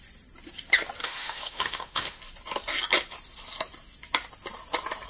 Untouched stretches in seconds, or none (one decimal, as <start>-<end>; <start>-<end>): 0.0-1.0; 2.2-5.1